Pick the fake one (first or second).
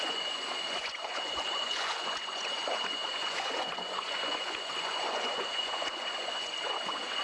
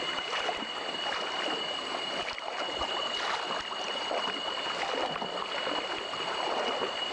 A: first